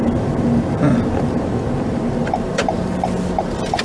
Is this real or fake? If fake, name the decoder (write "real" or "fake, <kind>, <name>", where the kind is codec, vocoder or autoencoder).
fake, vocoder, BigVGAN v2